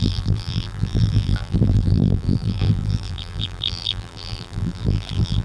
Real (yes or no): no